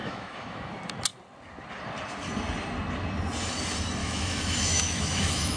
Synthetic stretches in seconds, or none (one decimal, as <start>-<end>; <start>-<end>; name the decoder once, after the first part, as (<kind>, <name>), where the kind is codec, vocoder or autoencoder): 0.0-0.7 (autoencoder, DAC-VAE); 4.0-5.6